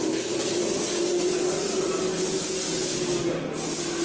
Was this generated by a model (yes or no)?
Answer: no